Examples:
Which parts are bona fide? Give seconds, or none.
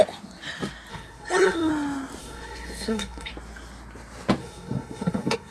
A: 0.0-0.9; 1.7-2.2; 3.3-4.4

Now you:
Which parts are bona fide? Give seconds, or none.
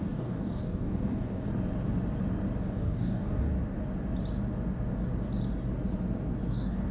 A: 1.5-2.7; 3.5-6.5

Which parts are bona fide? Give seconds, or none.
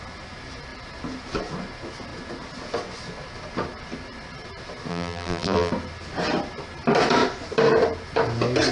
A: 0.0-4.9; 5.7-8.7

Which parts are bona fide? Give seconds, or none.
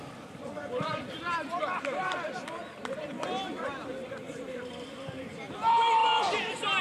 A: none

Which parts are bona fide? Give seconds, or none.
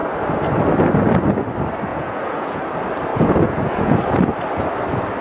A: 0.0-1.9; 2.6-3.1; 4.0-5.2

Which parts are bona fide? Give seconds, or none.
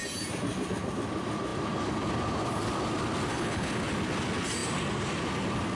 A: 0.0-3.3; 3.8-5.7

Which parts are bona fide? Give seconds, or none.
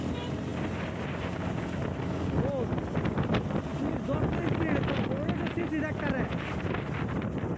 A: 0.0-7.6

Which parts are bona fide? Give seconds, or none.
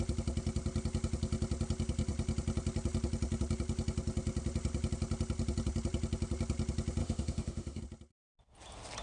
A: 0.0-7.0; 7.8-9.0